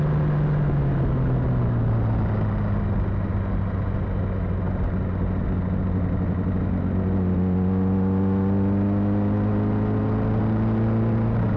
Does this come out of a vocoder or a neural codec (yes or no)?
no